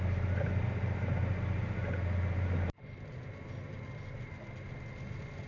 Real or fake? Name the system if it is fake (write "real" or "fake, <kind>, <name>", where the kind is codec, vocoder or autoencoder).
real